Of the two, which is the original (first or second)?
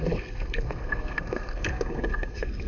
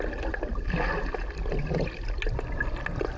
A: second